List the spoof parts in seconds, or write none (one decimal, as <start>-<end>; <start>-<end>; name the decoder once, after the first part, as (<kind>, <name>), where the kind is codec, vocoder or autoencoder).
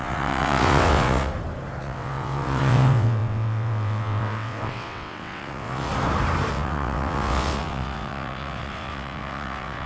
0.0-1.3 (vocoder, WaveNeXt); 1.8-5.9; 6.5-9.9